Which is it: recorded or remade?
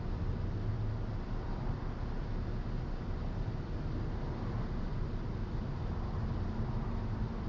recorded